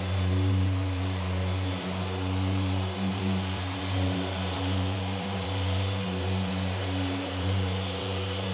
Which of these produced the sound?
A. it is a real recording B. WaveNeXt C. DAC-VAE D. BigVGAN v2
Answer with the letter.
D